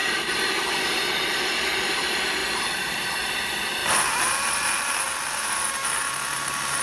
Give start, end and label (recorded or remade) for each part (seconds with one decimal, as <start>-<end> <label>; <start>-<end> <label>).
0.0-0.5 remade; 0.5-2.4 recorded; 2.4-3.1 remade; 3.1-3.8 recorded; 3.8-4.3 remade; 4.3-6.8 recorded